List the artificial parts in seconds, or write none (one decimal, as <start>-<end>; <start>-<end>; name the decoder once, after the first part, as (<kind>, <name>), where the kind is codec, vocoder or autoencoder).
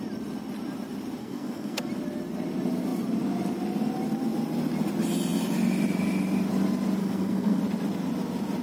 1.2-1.9 (codec, SNAC); 7.0-7.6